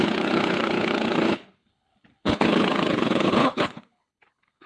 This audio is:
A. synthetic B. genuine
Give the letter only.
A